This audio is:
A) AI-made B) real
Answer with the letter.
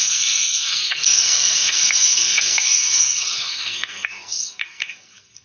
A